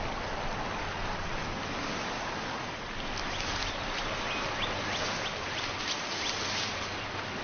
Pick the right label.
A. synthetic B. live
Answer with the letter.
B